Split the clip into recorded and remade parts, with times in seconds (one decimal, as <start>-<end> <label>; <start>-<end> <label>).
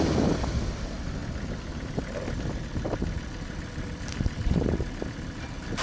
0.0-5.8 recorded